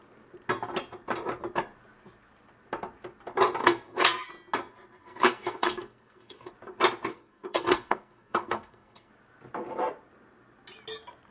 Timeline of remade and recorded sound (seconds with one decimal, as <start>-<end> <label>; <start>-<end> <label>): 0.0-3.6 recorded; 3.6-4.3 remade; 4.3-5.0 recorded; 5.0-6.5 remade; 6.5-7.1 recorded; 7.1-9.1 remade; 9.1-11.3 recorded

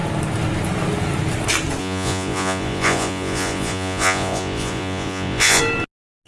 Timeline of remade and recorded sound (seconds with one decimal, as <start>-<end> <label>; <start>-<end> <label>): 0.0-1.8 recorded; 1.8-5.6 remade; 5.6-6.3 recorded

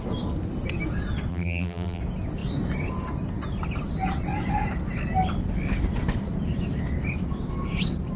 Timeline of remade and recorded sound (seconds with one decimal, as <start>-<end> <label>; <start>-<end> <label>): 0.0-1.3 recorded; 1.3-2.0 remade; 2.0-8.2 recorded

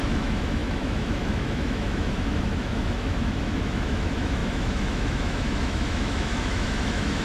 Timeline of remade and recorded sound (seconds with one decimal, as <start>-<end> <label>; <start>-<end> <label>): 0.0-7.2 remade